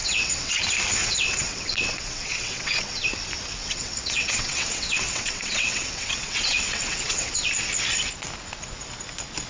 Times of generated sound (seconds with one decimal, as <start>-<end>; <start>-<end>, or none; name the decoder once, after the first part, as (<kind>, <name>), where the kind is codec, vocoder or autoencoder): 0.0-0.6 (vocoder, WaveNeXt); 1.0-3.0; 3.6-7.3